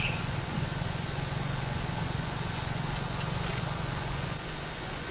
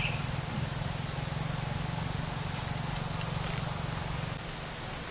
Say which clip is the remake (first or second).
first